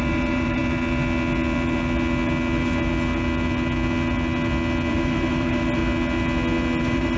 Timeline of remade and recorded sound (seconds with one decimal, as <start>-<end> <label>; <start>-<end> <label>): 0.0-0.6 remade; 0.6-4.9 recorded; 4.9-5.8 remade; 5.8-6.8 recorded; 6.8-7.2 remade